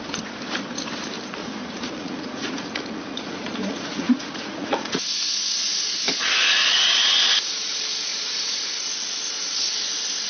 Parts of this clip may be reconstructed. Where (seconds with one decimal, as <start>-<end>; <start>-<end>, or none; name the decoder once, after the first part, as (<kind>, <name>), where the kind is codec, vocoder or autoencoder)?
1.4-5.0 (vocoder, Vocos); 8.1-8.7